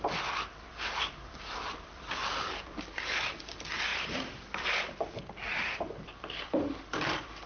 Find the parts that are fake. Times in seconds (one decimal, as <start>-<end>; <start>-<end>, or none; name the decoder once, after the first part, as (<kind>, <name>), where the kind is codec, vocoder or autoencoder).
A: 0.0-7.5 (vocoder, BigVGAN v2)